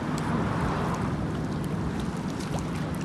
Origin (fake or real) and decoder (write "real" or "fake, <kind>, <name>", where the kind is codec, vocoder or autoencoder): real